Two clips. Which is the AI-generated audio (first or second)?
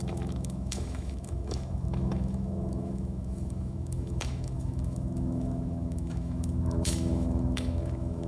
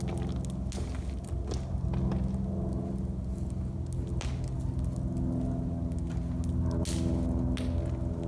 first